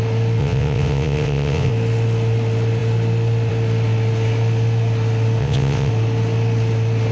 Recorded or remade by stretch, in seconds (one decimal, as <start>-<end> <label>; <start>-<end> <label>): 0.0-0.4 recorded; 0.4-1.7 remade; 1.7-5.4 recorded; 5.4-5.9 remade; 5.9-7.1 recorded